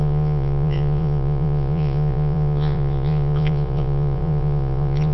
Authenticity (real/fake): fake